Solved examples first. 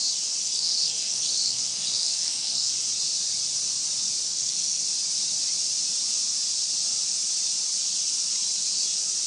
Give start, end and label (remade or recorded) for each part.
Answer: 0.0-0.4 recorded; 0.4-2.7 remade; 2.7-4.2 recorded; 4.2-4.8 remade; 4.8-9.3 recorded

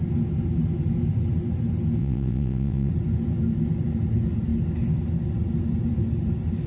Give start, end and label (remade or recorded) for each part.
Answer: 0.0-2.0 recorded; 2.0-2.9 remade; 2.9-6.7 recorded

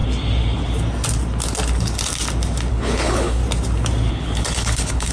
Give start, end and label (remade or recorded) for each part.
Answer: 0.0-2.7 recorded; 2.7-3.4 remade; 3.4-4.1 recorded; 4.1-5.1 remade

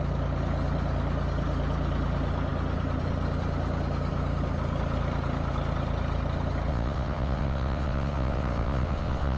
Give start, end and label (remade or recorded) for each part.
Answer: 0.0-6.7 recorded; 6.7-9.4 remade

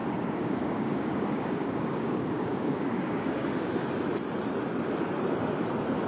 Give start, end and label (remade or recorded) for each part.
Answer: 0.0-3.7 remade; 3.7-6.1 recorded

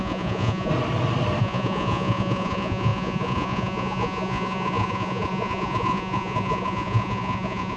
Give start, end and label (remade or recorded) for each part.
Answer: 0.0-0.7 remade; 0.7-1.4 recorded; 1.4-7.8 remade

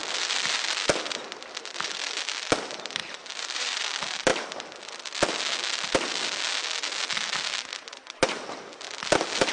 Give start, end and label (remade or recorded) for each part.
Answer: 0.0-3.0 recorded; 3.0-3.8 remade; 3.8-9.5 recorded

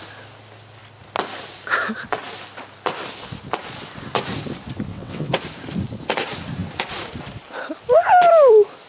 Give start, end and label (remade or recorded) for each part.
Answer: 0.0-4.9 recorded; 4.9-5.4 remade; 5.4-8.9 recorded